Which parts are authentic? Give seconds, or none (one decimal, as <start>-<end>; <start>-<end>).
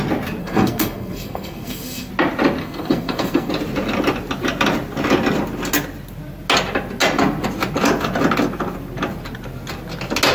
0.0-0.4; 2.1-2.6; 3.5-10.3